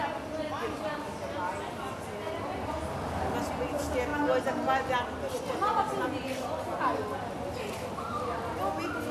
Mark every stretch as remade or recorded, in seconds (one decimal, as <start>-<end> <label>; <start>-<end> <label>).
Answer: 0.0-9.1 recorded